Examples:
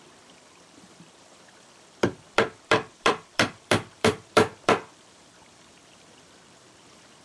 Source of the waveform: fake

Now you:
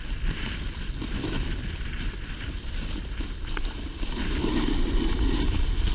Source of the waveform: real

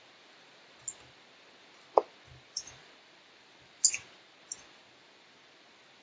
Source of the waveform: real